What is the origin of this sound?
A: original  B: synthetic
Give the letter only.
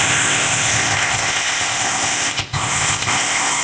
B